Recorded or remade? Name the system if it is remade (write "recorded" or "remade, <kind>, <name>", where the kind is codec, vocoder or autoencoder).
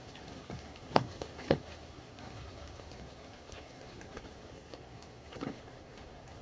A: remade, codec, SNAC